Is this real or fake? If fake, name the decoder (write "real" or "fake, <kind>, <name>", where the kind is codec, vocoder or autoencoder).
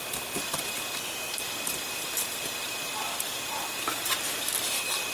real